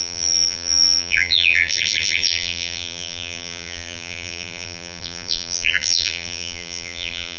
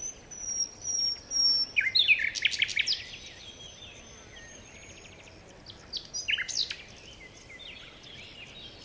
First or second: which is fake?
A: first